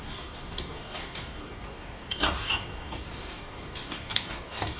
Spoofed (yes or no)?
yes